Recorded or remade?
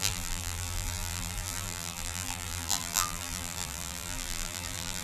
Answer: remade